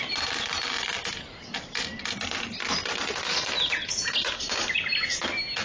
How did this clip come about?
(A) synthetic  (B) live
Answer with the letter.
B